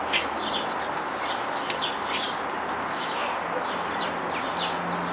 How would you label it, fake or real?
real